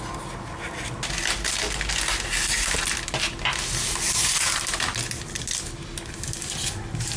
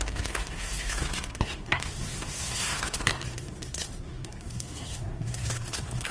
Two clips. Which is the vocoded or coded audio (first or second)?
second